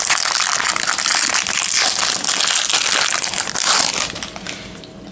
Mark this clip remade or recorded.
recorded